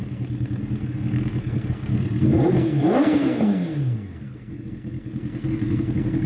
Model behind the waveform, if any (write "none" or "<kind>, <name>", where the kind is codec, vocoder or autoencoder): codec, SNAC